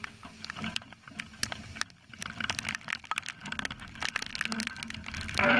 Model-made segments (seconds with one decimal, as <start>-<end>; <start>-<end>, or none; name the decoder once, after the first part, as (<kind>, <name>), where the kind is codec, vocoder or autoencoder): none